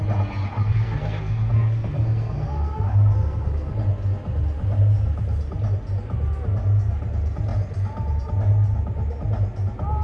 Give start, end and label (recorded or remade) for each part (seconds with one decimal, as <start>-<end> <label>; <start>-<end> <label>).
0.0-0.6 recorded; 0.6-3.7 remade; 3.7-10.0 recorded